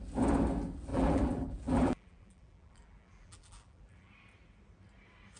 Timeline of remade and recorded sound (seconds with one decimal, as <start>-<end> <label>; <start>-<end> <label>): 0.0-0.9 recorded; 0.9-4.1 remade; 4.1-5.4 recorded